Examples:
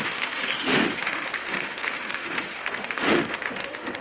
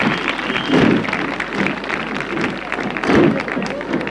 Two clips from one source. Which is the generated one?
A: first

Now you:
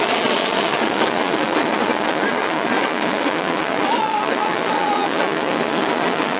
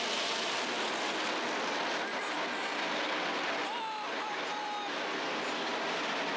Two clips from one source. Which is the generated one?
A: first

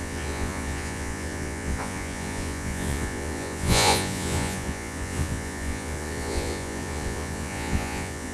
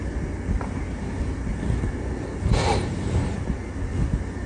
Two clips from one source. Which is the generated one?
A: first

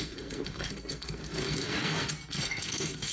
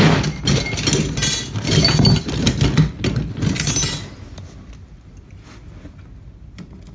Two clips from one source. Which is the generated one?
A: first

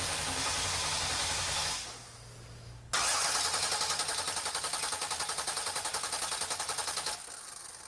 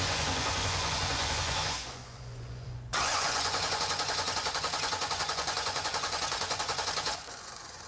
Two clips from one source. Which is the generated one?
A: second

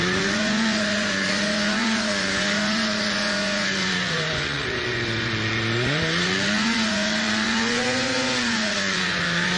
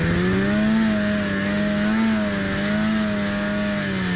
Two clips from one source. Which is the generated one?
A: first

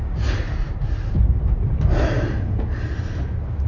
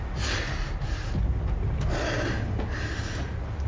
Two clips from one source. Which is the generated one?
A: first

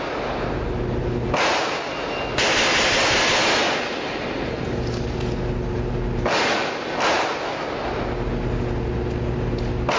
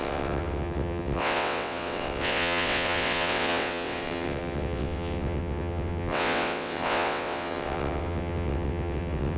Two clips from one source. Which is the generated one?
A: second